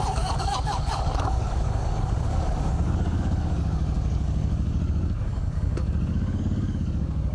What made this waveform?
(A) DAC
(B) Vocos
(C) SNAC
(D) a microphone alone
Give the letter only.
A